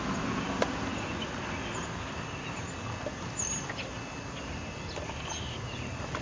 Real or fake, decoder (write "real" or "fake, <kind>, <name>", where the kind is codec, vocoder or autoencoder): real